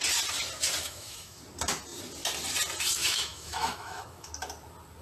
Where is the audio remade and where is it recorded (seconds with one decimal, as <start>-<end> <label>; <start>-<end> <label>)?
0.0-0.8 recorded; 0.8-1.4 remade; 1.4-3.0 recorded; 3.0-4.3 remade; 4.3-5.0 recorded